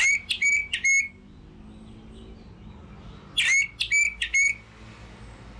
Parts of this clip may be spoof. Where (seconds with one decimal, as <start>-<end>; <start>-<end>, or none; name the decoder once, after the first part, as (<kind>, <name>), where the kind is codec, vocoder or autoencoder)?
none